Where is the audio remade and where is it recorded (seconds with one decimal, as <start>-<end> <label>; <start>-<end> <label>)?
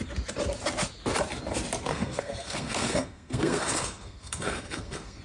0.0-1.9 recorded; 1.9-5.2 remade